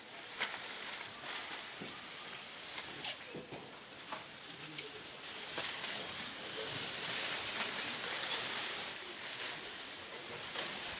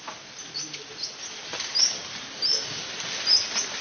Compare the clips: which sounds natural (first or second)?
second